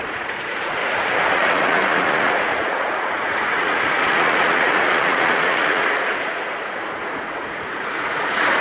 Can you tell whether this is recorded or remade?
remade